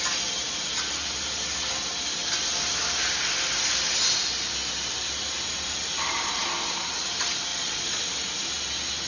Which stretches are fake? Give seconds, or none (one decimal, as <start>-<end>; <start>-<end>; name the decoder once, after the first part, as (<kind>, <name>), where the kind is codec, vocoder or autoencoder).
7.5-8.0 (vocoder, Vocos)